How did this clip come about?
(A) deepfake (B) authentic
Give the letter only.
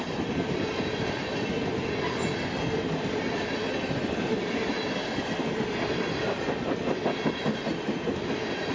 B